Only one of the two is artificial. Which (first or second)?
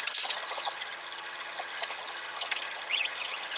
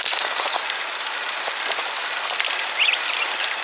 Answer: first